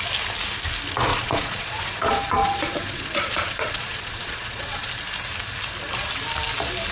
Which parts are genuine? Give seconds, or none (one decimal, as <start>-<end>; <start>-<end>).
0.0-1.1; 4.9-6.9

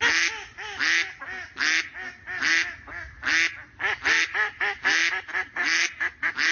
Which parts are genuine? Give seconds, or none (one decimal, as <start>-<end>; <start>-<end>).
0.0-6.5

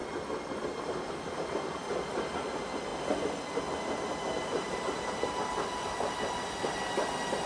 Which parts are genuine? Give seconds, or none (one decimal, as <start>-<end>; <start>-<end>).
0.0-7.5

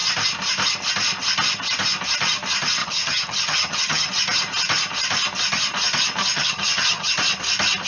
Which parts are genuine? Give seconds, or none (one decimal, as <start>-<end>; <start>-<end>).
0.0-2.8; 4.1-6.2; 7.1-7.9